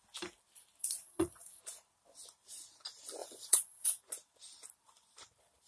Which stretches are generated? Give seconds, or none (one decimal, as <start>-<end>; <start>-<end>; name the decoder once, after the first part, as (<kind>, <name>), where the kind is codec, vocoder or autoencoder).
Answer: 0.8-1.6 (vocoder, Vocos); 3.2-4.0